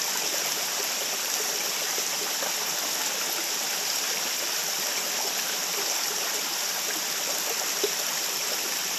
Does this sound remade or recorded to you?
recorded